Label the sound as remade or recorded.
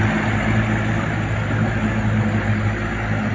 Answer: recorded